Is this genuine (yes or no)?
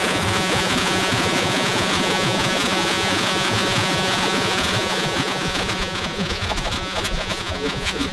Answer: no